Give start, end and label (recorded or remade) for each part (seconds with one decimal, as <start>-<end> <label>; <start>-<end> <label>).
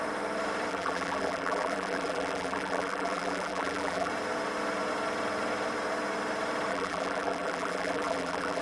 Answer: 0.0-0.7 recorded; 0.7-4.1 remade; 4.1-6.7 recorded; 6.7-8.6 remade